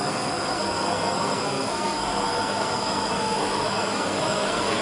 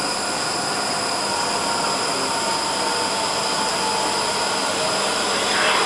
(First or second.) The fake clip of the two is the first